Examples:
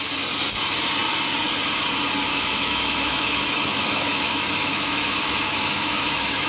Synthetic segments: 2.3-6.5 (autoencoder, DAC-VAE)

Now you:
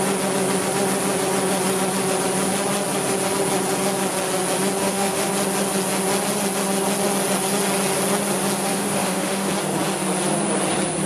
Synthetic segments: 4.8-5.3 (autoencoder, DAC-VAE); 8.7-9.5